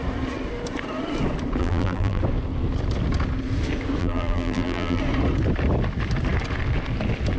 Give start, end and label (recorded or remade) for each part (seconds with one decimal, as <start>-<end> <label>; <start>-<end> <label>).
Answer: 0.0-1.6 recorded; 1.6-2.2 remade; 2.2-4.0 recorded; 4.0-5.0 remade; 5.0-7.4 recorded

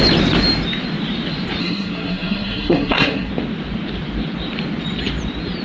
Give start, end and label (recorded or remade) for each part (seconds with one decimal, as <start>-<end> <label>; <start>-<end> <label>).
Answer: 0.0-1.6 recorded; 1.6-3.3 remade; 3.3-5.6 recorded

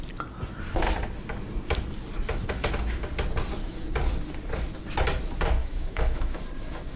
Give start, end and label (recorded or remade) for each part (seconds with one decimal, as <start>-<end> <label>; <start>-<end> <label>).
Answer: 0.0-5.6 recorded; 5.6-6.4 remade; 6.4-7.0 recorded

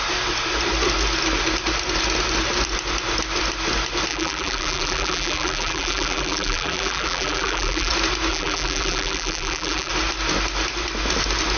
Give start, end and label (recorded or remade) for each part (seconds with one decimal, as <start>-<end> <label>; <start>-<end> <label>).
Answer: 0.0-4.1 recorded; 4.1-7.9 remade; 7.9-8.3 recorded; 8.3-9.9 remade; 9.9-11.6 recorded